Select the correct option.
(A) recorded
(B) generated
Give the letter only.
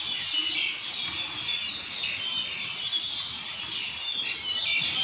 A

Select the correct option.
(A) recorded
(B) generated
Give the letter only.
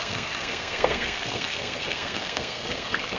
B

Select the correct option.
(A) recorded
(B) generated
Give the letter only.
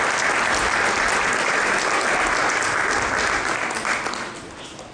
A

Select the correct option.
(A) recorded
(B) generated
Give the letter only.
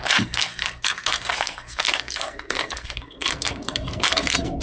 B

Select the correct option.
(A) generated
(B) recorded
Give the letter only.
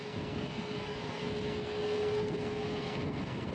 A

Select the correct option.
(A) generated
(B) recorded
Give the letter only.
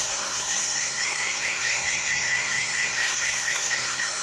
A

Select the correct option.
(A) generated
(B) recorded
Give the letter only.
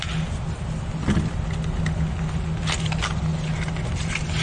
B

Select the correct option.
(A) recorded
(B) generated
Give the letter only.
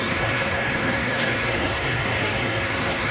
B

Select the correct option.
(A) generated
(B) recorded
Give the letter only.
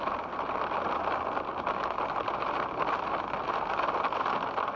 B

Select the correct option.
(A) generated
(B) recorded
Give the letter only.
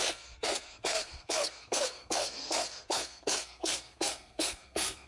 A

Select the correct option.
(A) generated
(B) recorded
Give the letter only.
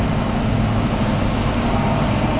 B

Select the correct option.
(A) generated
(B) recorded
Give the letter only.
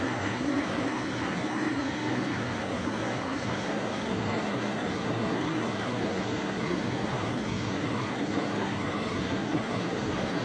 A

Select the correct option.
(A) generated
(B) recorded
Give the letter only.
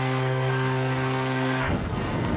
A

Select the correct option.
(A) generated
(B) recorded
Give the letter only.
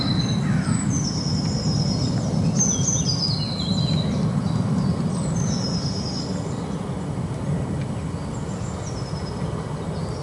B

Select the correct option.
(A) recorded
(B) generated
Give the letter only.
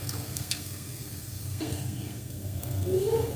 B